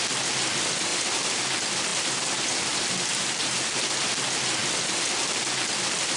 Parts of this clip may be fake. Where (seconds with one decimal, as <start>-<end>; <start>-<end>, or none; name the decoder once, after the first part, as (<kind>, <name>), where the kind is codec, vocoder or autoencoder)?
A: 0.9-1.4 (vocoder, BigVGAN v2); 3.1-4.0